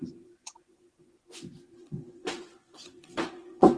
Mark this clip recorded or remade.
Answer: remade